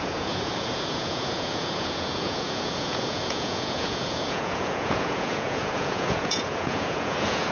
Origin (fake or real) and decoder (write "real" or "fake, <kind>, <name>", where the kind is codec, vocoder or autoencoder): fake, vocoder, Vocos